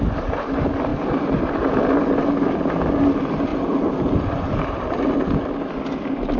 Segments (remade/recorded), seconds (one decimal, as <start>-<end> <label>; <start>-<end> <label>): 0.0-3.5 recorded; 3.5-5.2 remade; 5.2-6.4 recorded